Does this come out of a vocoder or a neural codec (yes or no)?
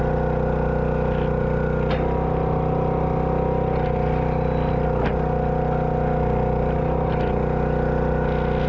no